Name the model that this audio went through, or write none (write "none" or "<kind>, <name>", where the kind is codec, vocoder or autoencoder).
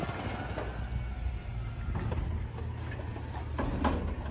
none